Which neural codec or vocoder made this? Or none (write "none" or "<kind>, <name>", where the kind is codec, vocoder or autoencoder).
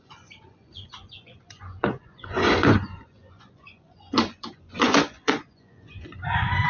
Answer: vocoder, Vocos